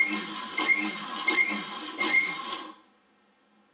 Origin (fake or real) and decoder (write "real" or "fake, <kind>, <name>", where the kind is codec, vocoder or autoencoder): real